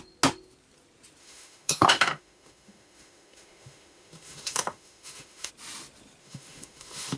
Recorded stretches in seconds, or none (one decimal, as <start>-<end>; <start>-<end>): 0.0-1.2; 5.5-6.2